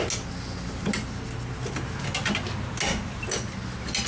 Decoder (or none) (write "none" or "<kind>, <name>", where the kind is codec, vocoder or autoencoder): none